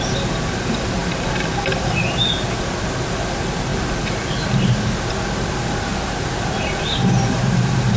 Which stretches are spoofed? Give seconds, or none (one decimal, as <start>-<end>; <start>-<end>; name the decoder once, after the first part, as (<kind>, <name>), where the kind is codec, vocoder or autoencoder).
5.9-6.8 (vocoder, BigVGAN v2)